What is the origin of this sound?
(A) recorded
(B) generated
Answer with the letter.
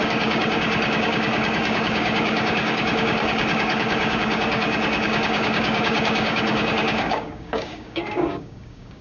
B